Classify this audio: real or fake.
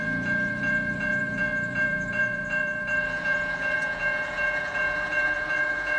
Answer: fake